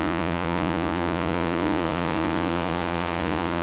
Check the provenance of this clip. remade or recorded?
remade